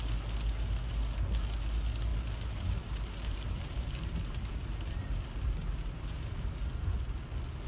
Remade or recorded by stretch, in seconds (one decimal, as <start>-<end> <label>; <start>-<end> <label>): 0.0-2.1 recorded; 2.1-6.7 remade; 6.7-7.7 recorded